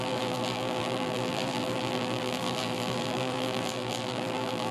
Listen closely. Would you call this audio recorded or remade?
remade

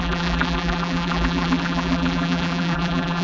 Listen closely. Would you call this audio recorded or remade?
remade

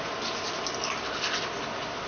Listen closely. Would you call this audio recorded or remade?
recorded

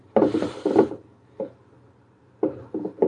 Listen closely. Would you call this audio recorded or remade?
remade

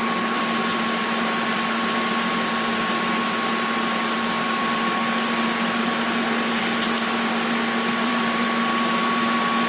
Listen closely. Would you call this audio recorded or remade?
remade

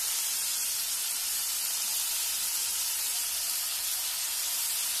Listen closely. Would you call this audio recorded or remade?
recorded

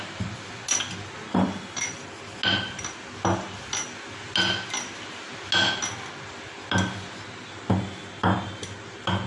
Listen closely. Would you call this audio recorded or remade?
recorded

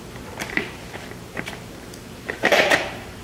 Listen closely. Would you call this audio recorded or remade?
remade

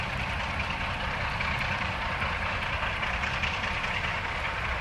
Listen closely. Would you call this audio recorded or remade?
recorded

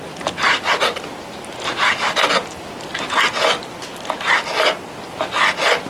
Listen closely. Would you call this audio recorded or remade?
recorded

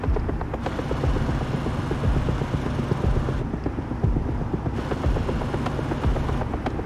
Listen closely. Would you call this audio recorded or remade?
recorded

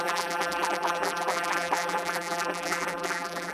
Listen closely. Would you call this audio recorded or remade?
remade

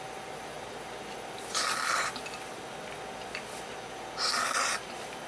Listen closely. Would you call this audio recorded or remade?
recorded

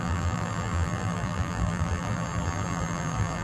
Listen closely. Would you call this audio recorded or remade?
remade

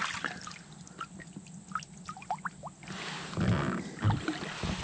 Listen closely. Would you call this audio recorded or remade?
recorded